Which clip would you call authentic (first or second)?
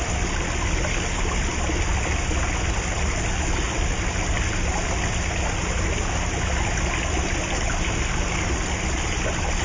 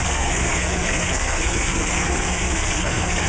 first